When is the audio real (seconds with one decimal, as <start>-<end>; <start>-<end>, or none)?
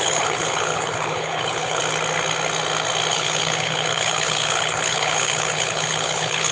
1.8-3.1